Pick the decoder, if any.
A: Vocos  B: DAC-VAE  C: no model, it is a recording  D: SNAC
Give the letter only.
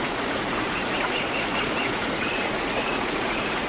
A